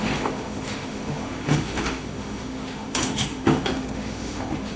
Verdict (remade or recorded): remade